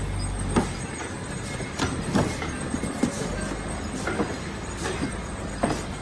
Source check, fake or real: real